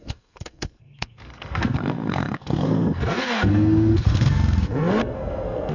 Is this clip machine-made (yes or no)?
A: yes